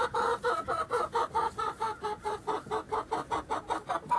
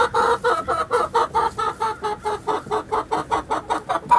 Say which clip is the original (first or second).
second